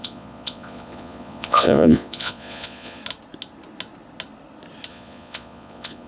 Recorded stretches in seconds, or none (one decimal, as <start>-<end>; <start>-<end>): 3.0-4.9